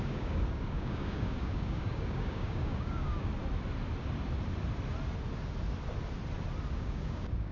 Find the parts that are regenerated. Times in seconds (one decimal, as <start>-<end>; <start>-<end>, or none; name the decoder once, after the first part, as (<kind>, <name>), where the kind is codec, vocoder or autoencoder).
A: 0.0-3.3 (codec, DAC); 6.7-7.5